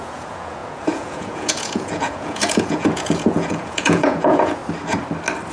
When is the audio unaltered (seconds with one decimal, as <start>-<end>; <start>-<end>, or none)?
4.6-5.5